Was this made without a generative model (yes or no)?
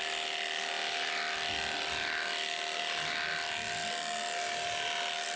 yes